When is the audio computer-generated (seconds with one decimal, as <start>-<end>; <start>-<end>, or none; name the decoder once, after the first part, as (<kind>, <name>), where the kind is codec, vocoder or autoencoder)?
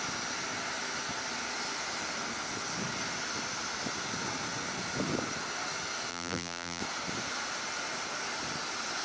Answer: 6.1-6.8 (vocoder, BigVGAN v2)